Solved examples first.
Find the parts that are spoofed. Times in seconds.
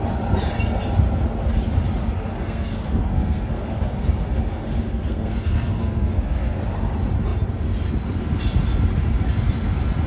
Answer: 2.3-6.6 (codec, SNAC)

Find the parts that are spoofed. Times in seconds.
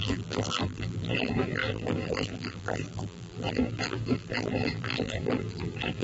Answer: 0.0-6.0 (vocoder, BigVGAN v2)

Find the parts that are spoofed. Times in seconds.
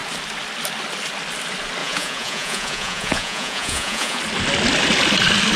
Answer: 1.8-4.2 (vocoder, Vocos)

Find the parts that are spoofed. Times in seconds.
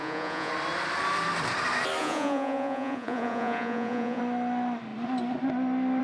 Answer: 0.0-0.5 (vocoder, Vocos); 2.0-4.2